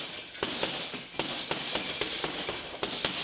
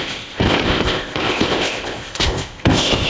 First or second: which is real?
first